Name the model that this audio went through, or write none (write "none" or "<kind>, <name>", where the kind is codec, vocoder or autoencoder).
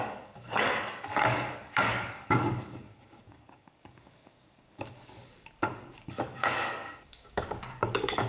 codec, DAC